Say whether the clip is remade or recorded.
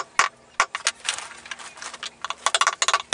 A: recorded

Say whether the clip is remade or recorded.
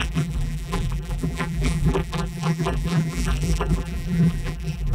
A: remade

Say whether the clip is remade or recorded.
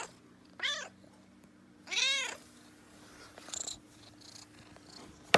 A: recorded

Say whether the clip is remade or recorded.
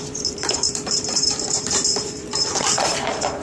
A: remade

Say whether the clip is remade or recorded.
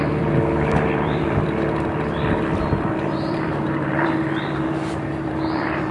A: remade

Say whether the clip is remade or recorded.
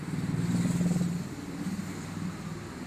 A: recorded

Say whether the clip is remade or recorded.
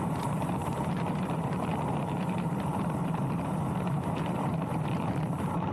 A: remade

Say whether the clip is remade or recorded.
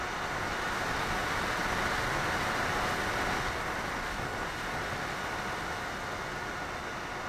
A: recorded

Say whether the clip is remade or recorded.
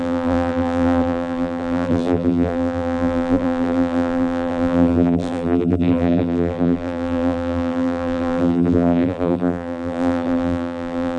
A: remade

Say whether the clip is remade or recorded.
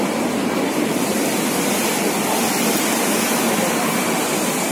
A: remade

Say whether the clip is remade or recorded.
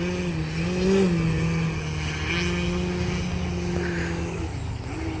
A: recorded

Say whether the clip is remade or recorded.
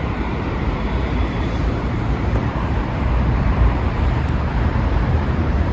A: remade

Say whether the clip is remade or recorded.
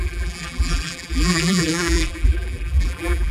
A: remade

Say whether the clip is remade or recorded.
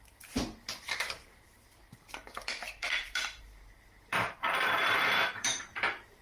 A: remade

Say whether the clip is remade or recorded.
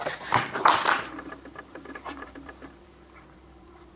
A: remade